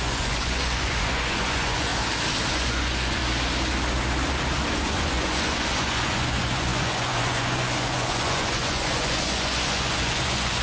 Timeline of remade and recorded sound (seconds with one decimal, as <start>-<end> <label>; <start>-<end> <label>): 0.0-1.9 remade; 1.9-2.5 recorded; 2.5-3.2 remade; 3.2-4.7 recorded; 4.7-10.6 remade